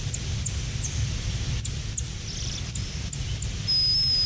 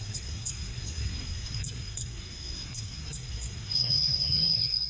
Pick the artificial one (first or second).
second